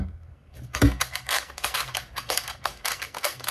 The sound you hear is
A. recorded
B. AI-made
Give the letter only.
B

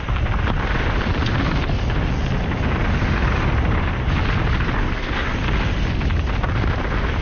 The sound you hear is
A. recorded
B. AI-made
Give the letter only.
A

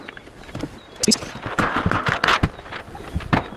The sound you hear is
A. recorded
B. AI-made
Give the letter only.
A